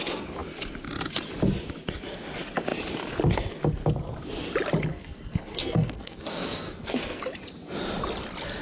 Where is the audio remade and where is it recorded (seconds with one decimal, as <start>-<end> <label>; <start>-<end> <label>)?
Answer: 0.0-4.9 recorded; 4.9-7.2 remade; 7.2-8.6 recorded